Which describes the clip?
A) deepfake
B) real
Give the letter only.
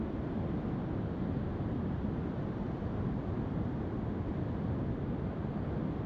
B